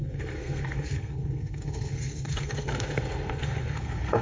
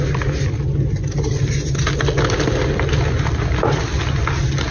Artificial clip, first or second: first